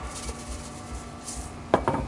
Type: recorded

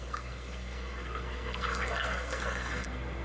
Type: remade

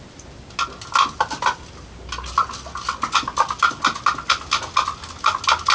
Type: recorded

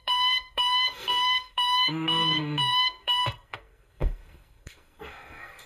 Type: remade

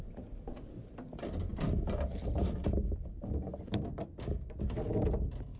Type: recorded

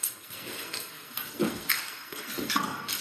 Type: remade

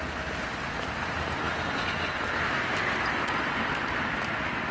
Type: recorded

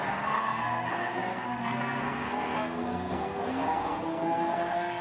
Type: remade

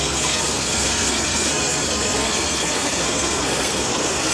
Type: remade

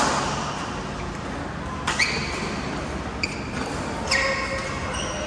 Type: recorded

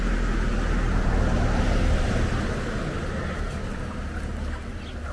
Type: recorded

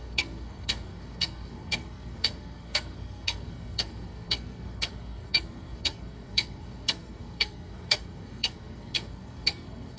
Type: remade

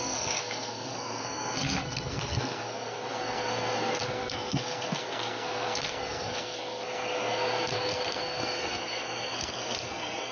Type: remade